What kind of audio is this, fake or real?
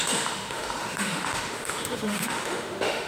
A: fake